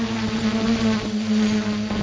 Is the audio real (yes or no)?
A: yes